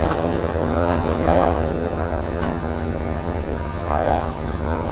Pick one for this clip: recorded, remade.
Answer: remade